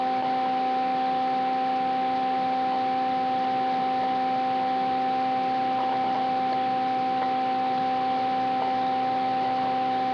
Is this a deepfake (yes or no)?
no